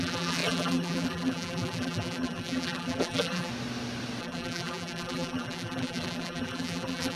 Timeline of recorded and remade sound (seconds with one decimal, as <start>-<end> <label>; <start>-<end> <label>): 0.0-3.5 remade; 3.5-4.2 recorded; 4.2-7.2 remade